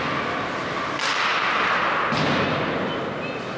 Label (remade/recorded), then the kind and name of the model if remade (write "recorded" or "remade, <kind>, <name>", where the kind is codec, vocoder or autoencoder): recorded